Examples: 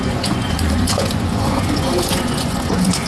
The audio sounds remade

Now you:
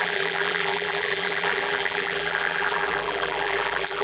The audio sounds remade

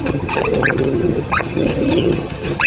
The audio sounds remade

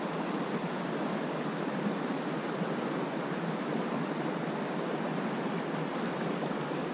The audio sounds recorded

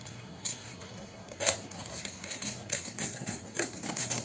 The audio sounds remade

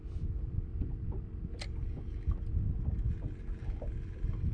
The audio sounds recorded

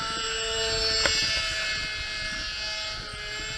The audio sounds recorded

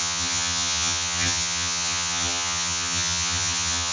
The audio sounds remade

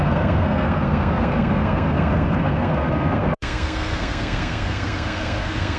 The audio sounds remade